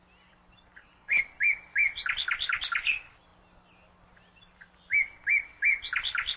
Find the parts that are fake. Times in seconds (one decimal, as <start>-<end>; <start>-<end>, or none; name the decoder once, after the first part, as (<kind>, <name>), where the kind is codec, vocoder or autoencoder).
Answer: 0.8-1.3 (codec, HILCodec)